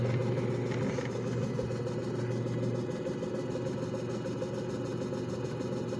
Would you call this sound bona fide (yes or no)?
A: yes